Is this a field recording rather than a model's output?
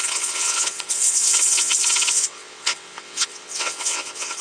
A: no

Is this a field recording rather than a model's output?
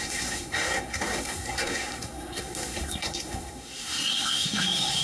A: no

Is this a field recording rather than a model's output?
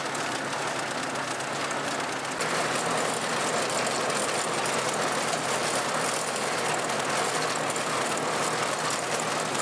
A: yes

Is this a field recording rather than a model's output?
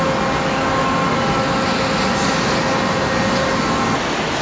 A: yes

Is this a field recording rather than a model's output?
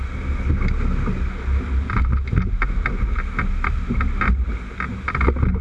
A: yes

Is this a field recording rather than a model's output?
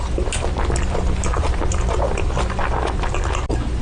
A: yes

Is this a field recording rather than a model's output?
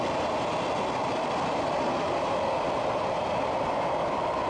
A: yes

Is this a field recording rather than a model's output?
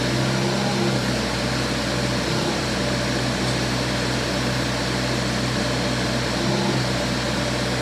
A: yes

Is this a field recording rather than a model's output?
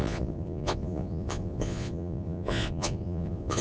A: no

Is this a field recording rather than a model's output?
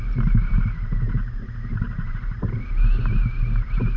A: yes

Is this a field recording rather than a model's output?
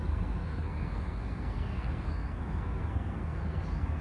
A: no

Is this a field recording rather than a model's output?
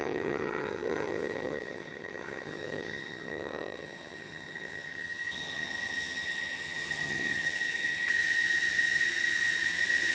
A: no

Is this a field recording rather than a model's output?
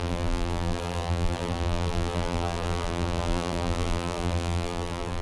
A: no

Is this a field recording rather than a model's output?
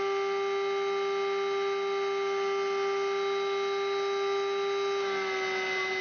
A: yes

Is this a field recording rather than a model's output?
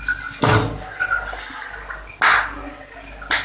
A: yes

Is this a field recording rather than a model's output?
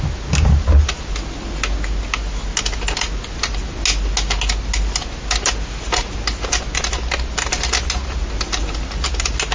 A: yes